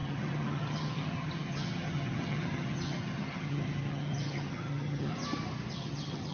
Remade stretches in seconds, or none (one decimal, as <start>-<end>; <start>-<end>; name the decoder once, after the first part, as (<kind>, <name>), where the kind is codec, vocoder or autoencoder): 0.0-5.1 (vocoder, HiFi-GAN); 5.7-6.3